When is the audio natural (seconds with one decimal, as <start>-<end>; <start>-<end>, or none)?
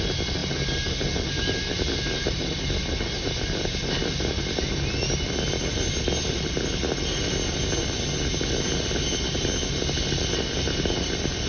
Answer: 0.0-11.5